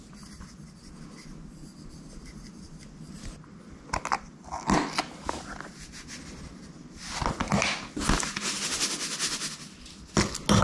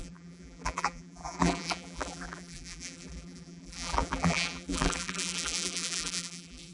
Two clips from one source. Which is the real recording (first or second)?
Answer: first